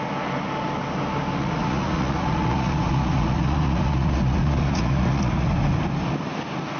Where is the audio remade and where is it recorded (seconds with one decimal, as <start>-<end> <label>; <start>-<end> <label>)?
0.0-1.4 recorded; 1.4-5.5 remade; 5.5-6.8 recorded